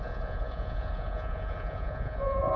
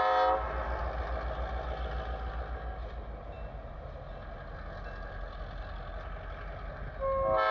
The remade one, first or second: first